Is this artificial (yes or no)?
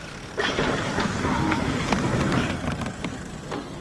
no